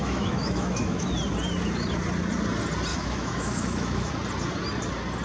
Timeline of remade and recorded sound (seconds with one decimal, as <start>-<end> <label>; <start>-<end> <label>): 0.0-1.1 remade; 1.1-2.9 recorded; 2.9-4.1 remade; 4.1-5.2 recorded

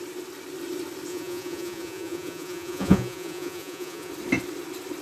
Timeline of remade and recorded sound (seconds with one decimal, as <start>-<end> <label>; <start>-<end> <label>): 0.0-1.1 recorded; 1.1-4.1 remade; 4.1-5.0 recorded

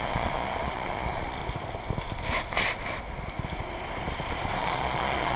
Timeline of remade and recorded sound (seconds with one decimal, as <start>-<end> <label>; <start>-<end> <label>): 0.0-1.4 remade; 1.4-4.6 recorded; 4.6-5.4 remade

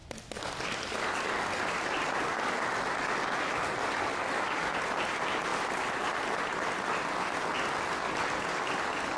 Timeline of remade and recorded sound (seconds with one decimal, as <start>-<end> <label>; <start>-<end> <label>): 0.0-5.5 recorded; 5.5-6.0 remade; 6.0-9.2 recorded

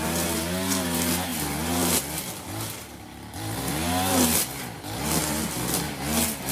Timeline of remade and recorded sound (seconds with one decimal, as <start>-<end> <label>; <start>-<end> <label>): 0.0-6.5 recorded

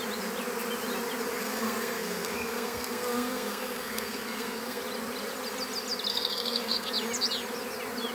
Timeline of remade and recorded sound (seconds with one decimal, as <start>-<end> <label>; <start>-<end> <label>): 0.0-1.4 recorded; 1.4-4.8 remade; 4.8-6.1 recorded; 6.1-6.9 remade; 6.9-8.1 recorded

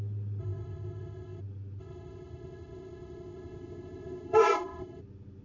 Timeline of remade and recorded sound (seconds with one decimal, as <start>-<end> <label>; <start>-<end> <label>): 0.0-0.4 recorded; 0.4-1.4 remade; 1.4-1.8 recorded; 1.8-5.0 remade; 5.0-5.4 recorded

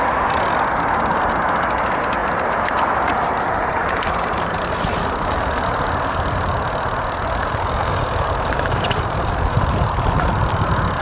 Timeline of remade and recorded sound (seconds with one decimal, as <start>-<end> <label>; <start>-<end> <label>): 0.0-2.2 recorded; 2.2-5.5 remade; 5.5-7.4 recorded; 7.4-10.3 remade; 10.3-11.0 recorded